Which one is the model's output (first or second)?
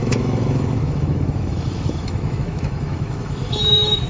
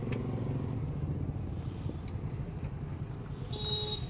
first